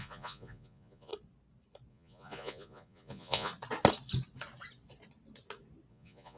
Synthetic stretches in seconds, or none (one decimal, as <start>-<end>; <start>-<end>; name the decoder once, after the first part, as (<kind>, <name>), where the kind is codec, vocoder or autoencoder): 0.0-1.1 (vocoder, Vocos); 1.9-3.5; 5.9-6.4